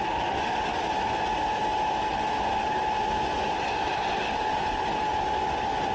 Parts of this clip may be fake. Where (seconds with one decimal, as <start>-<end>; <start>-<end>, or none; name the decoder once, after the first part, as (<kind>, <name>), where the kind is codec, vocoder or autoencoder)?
none